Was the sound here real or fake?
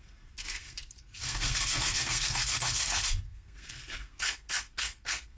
fake